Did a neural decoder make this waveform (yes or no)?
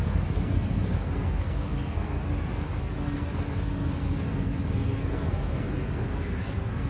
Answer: yes